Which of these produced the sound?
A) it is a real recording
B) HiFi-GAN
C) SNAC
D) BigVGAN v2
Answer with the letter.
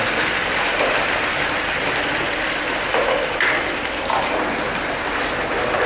A